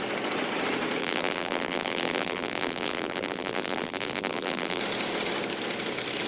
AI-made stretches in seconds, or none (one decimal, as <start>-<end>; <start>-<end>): 1.0-4.8